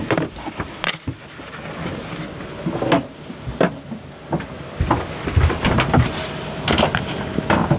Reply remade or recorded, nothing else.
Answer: recorded